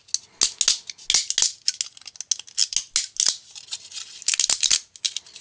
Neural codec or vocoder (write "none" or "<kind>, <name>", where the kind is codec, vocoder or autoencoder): none